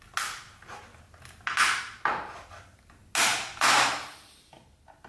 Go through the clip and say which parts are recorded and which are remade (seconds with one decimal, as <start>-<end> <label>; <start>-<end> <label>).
0.0-5.1 recorded